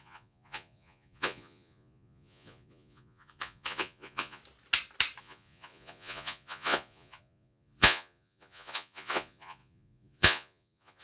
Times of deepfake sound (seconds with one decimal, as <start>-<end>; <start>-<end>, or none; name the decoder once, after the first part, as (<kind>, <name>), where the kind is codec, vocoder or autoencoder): 0.0-4.4 (vocoder, Vocos); 5.2-11.0